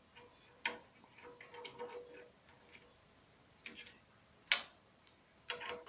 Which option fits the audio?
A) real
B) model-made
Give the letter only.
A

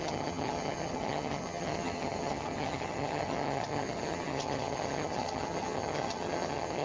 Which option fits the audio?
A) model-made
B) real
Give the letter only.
A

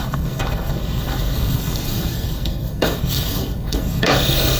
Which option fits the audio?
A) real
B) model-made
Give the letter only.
B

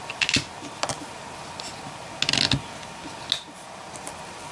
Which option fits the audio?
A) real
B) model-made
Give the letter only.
A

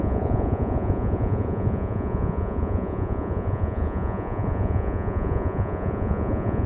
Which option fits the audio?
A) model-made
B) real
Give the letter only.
A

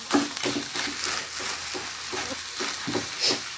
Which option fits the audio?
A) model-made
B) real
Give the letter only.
B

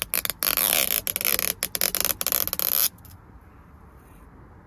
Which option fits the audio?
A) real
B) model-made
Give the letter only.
A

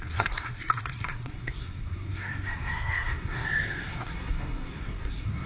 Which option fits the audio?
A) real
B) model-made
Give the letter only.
B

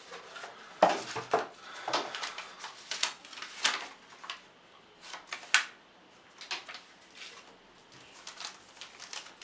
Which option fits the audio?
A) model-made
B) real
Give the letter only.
B